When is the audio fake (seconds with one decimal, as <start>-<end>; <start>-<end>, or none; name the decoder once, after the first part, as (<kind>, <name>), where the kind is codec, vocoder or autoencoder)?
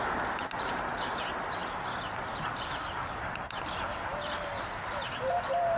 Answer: 1.6-3.1 (vocoder, BigVGAN v2); 4.1-5.8